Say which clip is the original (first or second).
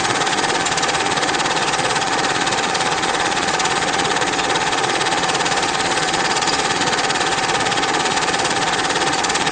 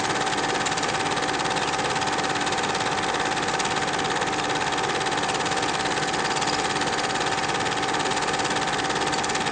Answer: second